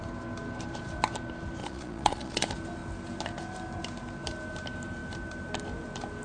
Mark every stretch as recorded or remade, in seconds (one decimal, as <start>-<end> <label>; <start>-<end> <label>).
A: 0.0-1.6 recorded; 1.6-2.4 remade; 2.4-6.2 recorded